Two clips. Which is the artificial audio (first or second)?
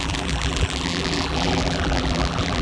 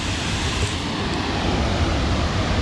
first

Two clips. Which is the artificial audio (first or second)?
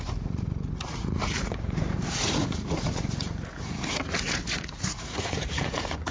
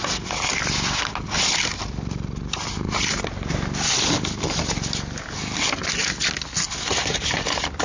first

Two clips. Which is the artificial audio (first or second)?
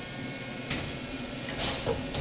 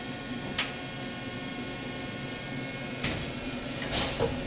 first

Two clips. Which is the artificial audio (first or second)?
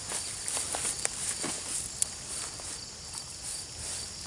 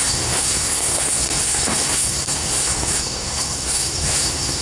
second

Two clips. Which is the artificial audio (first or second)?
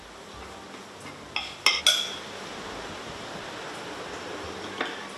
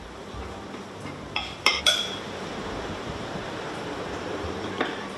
second